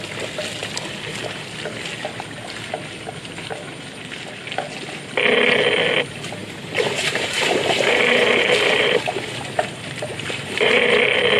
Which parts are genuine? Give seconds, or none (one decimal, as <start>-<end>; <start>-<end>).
0.0-6.4; 10.9-11.4

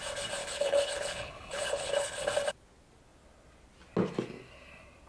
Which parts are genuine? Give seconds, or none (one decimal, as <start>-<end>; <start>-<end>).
0.0-0.4; 2.2-5.1

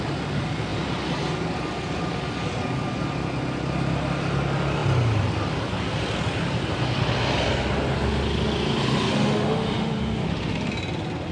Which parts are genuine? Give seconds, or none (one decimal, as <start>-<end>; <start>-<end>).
0.0-9.1; 10.7-11.3

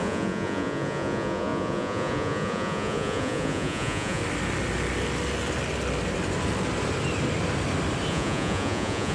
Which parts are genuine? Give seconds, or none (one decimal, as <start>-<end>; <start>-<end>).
4.2-8.1

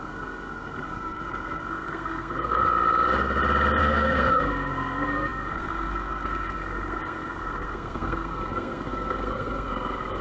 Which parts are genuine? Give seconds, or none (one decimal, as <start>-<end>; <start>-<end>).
2.6-3.8

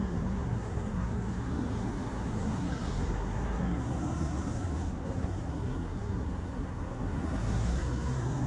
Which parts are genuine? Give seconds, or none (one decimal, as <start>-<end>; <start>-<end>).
none

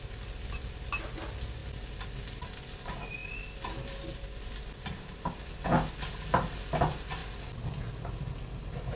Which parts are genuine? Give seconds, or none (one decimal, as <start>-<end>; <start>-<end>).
0.0-9.0